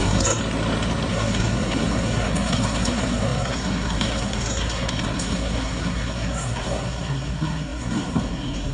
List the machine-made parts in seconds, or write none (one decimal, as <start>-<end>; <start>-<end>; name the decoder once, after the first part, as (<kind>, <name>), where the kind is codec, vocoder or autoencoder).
0.0-0.4 (codec, SNAC); 1.1-8.7